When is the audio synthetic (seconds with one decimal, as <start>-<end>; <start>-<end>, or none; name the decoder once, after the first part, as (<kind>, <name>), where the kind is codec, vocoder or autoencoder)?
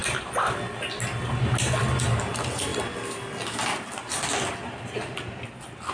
0.0-0.6 (vocoder, BigVGAN v2)